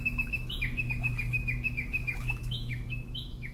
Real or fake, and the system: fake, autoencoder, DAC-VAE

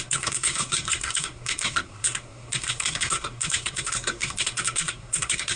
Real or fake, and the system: fake, codec, SNAC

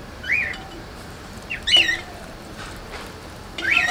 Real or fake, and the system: fake, vocoder, BigVGAN v2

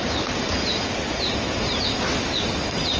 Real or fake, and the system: real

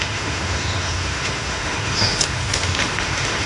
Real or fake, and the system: fake, autoencoder, DAC-VAE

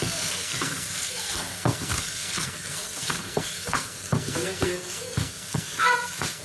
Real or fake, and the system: fake, codec, SNAC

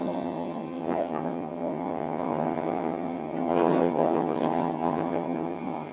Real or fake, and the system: fake, vocoder, HiFi-GAN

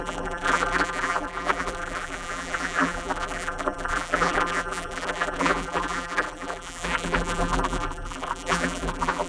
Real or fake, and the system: fake, vocoder, BigVGAN v2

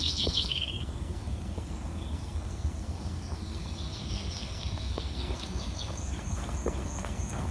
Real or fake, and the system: fake, codec, SNAC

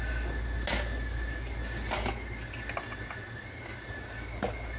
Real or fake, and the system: real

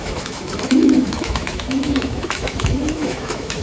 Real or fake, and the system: fake, autoencoder, DAC-VAE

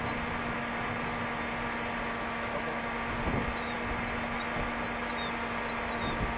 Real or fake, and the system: real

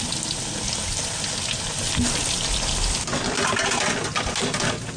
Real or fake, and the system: real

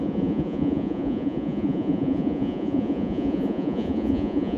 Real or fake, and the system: fake, vocoder, Vocos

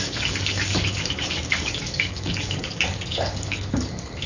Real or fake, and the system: fake, codec, DAC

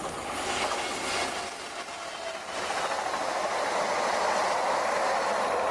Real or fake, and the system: real